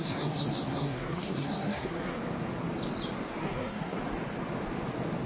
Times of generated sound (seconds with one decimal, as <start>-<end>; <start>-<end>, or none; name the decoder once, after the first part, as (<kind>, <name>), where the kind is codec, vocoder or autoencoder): 0.0-2.2 (codec, SNAC); 3.4-4.0